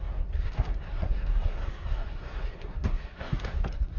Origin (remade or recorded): remade